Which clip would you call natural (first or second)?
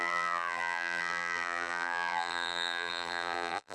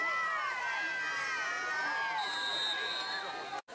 second